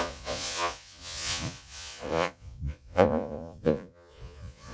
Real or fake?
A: fake